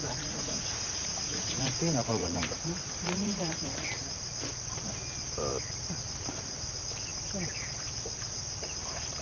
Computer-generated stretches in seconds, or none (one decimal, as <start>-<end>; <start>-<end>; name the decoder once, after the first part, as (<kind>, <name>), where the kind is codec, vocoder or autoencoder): 0.0-3.7 (vocoder, Vocos)